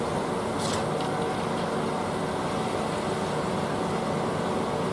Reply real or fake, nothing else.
real